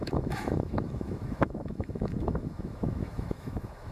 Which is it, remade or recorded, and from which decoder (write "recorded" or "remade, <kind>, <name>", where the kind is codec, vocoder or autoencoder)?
remade, autoencoder, DAC-VAE